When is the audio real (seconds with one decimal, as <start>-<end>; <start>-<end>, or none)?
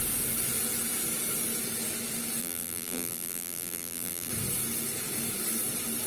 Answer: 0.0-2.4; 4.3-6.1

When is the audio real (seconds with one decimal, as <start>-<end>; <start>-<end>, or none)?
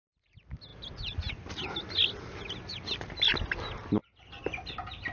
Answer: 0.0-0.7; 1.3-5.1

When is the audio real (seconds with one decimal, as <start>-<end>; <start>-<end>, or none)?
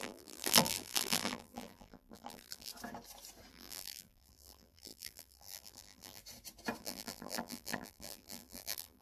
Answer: 2.7-3.5; 6.2-6.8